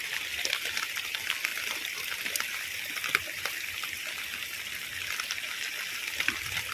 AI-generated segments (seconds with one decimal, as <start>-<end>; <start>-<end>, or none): none